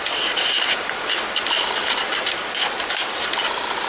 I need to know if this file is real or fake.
real